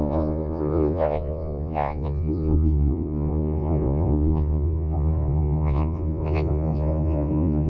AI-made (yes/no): yes